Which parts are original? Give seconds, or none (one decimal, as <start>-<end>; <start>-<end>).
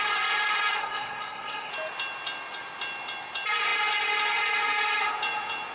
0.0-0.8; 1.7-5.7